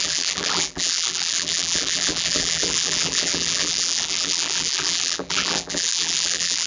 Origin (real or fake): fake